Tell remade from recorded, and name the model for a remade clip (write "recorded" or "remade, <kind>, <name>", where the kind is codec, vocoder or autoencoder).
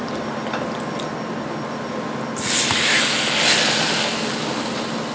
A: recorded